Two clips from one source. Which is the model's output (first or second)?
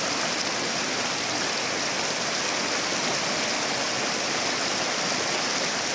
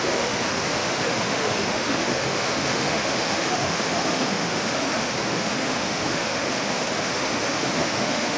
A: second